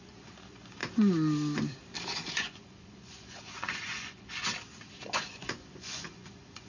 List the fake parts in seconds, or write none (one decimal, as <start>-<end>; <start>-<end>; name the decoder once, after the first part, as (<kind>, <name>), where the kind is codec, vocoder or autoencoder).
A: 0.0-0.8 (vocoder, Vocos); 2.3-4.5; 5.0-6.7